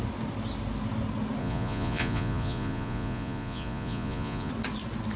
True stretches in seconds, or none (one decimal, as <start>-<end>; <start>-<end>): 0.0-1.4; 4.5-5.2